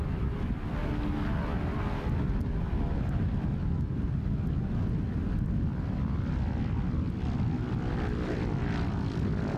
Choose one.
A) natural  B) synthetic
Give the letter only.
A